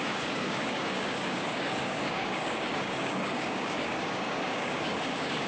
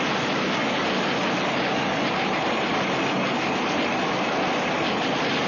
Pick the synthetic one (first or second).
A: first